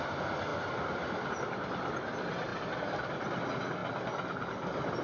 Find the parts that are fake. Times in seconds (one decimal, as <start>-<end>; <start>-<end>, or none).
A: none